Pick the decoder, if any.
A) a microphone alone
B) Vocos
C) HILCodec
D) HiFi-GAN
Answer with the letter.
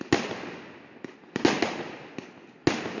A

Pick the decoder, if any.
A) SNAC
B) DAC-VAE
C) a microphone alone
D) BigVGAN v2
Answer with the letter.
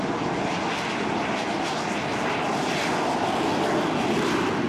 C